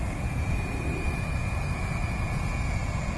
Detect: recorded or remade remade